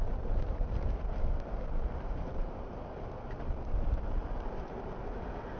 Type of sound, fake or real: real